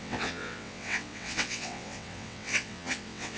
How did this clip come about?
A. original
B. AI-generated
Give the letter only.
B